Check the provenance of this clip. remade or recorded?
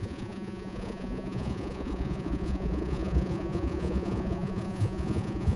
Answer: remade